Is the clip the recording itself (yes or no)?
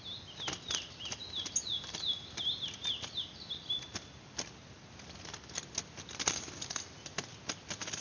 yes